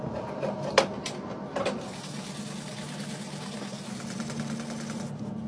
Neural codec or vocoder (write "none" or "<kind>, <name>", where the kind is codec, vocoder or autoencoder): none